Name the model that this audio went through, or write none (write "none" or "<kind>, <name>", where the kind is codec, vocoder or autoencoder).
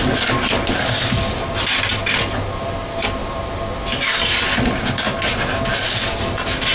none